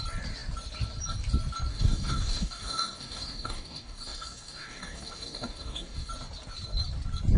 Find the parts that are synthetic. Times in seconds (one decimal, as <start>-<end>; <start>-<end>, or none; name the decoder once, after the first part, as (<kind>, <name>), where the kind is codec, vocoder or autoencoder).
1.7-6.1 (codec, DAC)